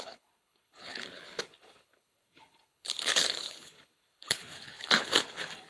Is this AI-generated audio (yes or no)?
yes